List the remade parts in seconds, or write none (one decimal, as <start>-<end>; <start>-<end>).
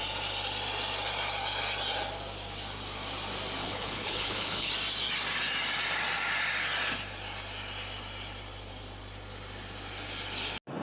3.6-4.7